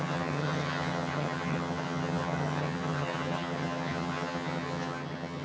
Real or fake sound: fake